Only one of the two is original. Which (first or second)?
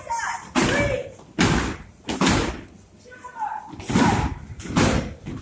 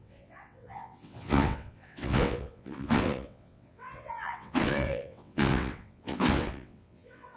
first